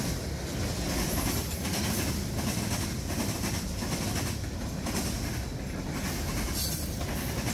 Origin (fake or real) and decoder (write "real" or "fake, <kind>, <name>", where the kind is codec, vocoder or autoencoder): real